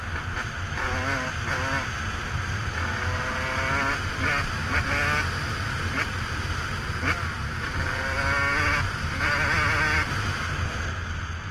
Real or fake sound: real